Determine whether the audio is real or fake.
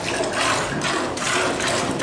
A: real